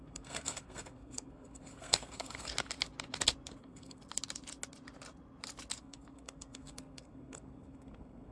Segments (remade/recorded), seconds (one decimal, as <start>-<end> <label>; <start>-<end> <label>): 0.0-2.5 remade; 2.5-3.6 recorded; 3.6-4.0 remade; 4.0-5.8 recorded; 5.8-8.3 remade